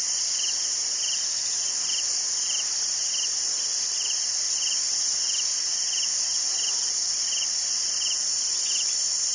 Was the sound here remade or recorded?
recorded